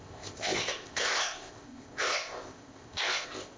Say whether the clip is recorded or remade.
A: remade